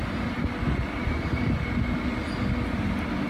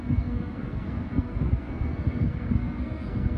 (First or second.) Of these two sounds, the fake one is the second